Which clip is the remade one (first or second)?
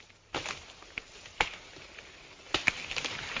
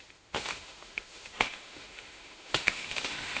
second